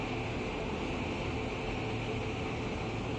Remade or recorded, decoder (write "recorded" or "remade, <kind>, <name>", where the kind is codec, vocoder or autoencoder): recorded